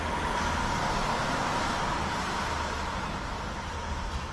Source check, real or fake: real